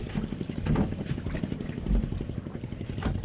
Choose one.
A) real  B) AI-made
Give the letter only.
A